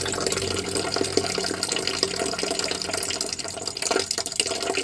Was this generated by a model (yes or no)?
no